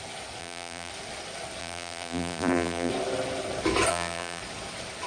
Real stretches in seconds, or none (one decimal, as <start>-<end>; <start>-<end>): 0.0-0.4; 0.9-1.6; 2.9-3.9; 4.4-5.1

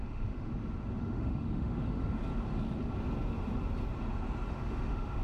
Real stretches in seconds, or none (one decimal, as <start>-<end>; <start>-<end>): 0.5-1.0; 2.2-4.5